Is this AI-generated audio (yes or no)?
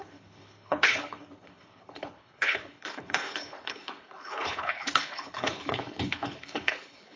yes